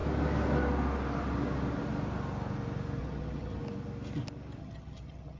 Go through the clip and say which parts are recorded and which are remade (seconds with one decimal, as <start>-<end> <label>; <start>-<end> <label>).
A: 0.0-3.0 recorded; 3.0-3.6 remade; 3.6-4.6 recorded; 4.6-5.4 remade